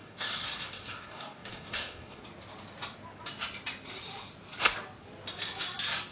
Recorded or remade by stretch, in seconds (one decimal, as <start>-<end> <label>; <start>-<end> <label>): 0.0-2.2 remade; 2.2-6.1 recorded